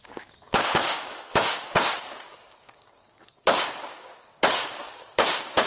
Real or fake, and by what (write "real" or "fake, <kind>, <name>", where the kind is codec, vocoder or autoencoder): fake, codec, DAC